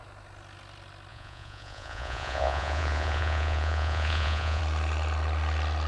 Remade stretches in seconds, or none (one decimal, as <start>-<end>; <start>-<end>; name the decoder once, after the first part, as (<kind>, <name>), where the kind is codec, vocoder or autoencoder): 1.1-4.6 (vocoder, Vocos)